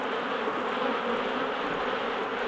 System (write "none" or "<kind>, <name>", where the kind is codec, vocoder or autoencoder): none